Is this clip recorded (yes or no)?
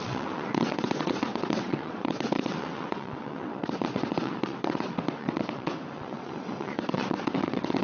no